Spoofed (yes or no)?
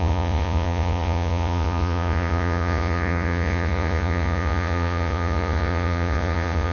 yes